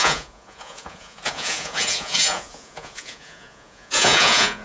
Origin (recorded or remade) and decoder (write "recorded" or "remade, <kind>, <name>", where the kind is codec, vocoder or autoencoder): remade, vocoder, Vocos